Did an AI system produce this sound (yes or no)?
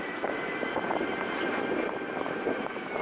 yes